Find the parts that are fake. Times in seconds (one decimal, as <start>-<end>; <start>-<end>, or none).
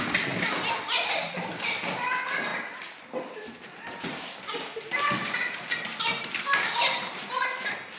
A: 0.0-2.5; 3.0-8.0